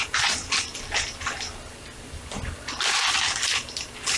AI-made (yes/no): no